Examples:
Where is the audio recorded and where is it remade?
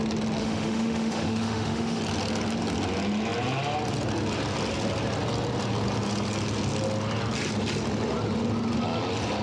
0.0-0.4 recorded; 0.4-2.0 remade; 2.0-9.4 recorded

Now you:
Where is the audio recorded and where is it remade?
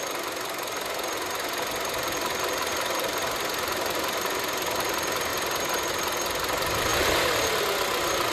0.0-2.7 recorded; 2.7-4.2 remade; 4.2-6.9 recorded; 6.9-7.6 remade; 7.6-8.3 recorded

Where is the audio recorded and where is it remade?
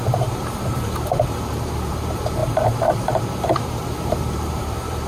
0.0-5.1 remade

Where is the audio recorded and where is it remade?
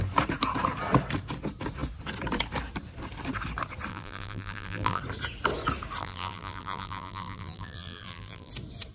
0.0-3.9 recorded; 3.9-5.0 remade; 5.0-6.0 recorded; 6.0-8.5 remade; 8.5-8.9 recorded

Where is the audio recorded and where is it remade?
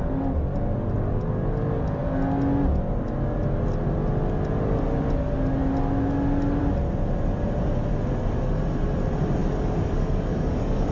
0.0-9.4 recorded; 9.4-10.9 remade